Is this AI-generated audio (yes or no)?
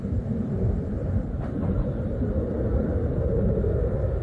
no